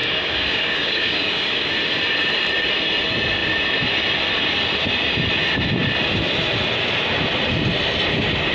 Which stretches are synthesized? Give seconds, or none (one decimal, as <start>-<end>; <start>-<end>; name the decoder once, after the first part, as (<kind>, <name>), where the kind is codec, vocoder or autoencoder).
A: 0.0-1.7 (codec, DAC)